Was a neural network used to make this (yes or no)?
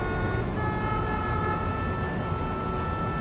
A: no